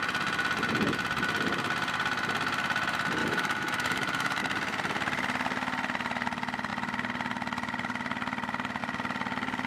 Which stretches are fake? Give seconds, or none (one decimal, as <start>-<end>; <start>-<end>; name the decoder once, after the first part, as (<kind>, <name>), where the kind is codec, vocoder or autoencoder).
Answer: 3.2-4.4 (autoencoder, DAC-VAE)